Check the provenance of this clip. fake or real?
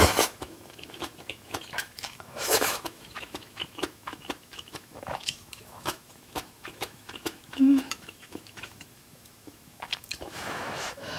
fake